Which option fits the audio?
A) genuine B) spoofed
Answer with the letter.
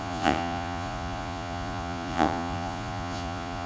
B